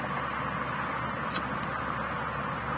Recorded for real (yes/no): yes